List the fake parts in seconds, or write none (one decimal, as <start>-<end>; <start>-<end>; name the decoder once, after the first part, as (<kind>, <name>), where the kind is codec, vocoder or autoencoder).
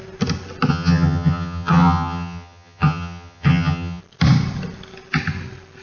0.7-4.0 (vocoder, HiFi-GAN)